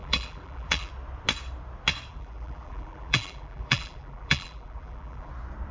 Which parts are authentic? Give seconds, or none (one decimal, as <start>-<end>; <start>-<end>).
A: 0.9-2.1; 5.3-5.7